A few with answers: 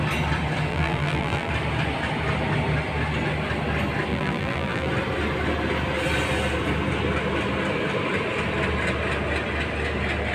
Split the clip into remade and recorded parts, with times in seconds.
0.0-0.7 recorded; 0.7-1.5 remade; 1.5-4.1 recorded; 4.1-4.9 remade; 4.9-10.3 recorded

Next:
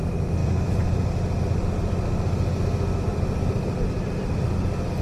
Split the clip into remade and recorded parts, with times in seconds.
0.0-0.4 recorded; 0.4-1.1 remade; 1.1-3.1 recorded; 3.1-4.4 remade; 4.4-5.0 recorded

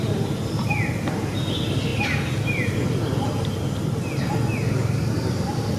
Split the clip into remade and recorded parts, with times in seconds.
0.0-1.9 remade; 1.9-5.3 recorded; 5.3-5.8 remade

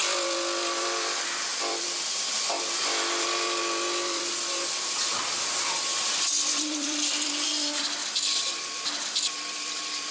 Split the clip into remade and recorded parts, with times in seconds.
0.0-8.0 remade; 8.0-9.3 recorded; 9.3-10.1 remade

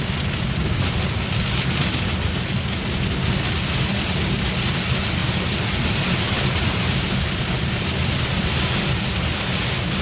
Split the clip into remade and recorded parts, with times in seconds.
0.0-5.2 recorded; 5.2-7.5 remade; 7.5-10.0 recorded